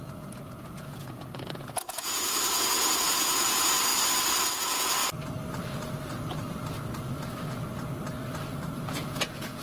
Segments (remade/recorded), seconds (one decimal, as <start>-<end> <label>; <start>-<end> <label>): 0.0-3.9 remade; 3.9-4.5 recorded; 4.5-5.0 remade; 5.0-8.9 recorded; 8.9-9.6 remade